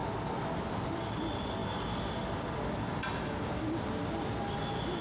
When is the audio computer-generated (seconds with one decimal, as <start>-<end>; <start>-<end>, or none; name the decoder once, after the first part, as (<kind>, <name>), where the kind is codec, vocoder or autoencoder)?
none